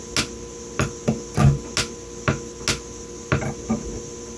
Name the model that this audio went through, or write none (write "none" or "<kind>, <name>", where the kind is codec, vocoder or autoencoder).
none